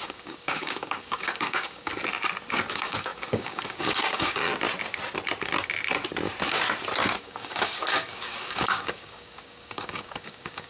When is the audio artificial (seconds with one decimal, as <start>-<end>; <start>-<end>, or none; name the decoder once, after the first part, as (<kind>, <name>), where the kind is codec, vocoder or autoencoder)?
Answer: 0.0-1.9 (codec, DAC); 2.7-4.5; 7.2-10.7